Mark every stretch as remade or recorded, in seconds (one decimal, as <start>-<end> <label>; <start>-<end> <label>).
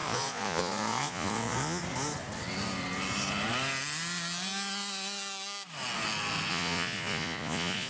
0.0-1.8 remade; 1.8-6.5 recorded; 6.5-7.9 remade